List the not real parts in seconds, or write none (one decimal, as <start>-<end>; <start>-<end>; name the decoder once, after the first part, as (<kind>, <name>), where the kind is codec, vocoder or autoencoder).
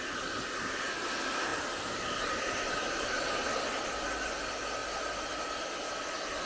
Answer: 1.5-3.8 (vocoder, BigVGAN v2)